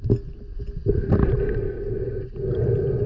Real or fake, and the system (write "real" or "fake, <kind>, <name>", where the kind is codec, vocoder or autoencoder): real